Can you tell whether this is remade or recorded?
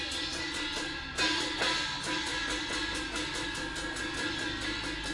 recorded